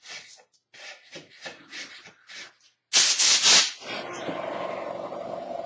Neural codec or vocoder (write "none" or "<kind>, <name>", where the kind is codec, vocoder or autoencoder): none